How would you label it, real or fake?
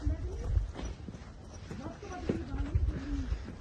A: real